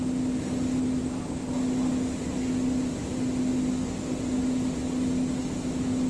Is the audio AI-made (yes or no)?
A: no